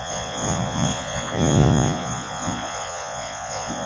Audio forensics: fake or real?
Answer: fake